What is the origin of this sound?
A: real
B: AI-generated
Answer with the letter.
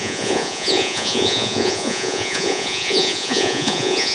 B